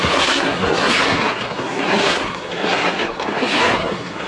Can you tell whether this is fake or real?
fake